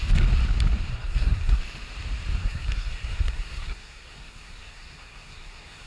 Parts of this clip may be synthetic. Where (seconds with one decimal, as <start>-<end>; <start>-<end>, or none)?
0.9-1.6; 2.4-5.9